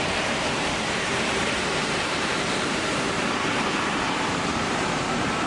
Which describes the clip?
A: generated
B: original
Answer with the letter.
A